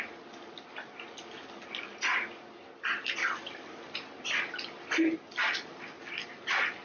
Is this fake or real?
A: real